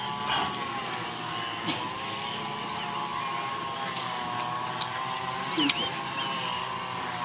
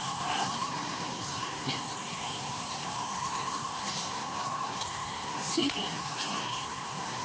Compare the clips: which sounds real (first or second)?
first